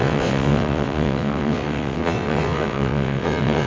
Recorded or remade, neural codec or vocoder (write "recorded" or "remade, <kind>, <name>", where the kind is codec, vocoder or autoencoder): remade, vocoder, WaveNeXt